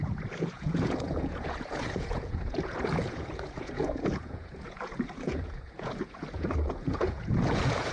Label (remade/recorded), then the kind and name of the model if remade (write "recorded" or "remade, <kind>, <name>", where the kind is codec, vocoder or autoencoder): remade, vocoder, Vocos